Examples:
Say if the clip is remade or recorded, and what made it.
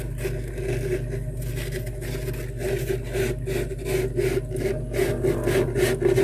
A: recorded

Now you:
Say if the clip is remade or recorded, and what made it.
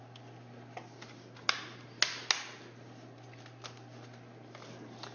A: recorded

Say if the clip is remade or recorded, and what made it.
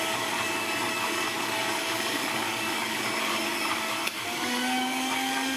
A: remade, codec, DAC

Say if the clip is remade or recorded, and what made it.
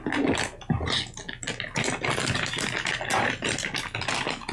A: recorded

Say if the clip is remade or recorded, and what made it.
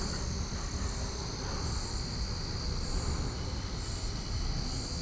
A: recorded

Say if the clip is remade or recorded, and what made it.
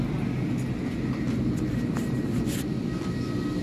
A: recorded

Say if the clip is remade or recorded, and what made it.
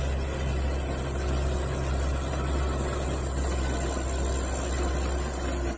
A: recorded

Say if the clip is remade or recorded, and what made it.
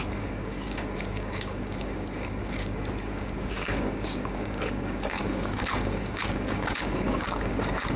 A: remade, codec, DAC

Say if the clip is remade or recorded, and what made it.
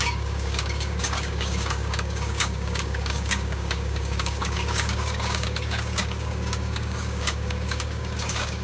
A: remade, codec, DAC